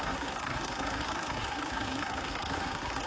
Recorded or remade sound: remade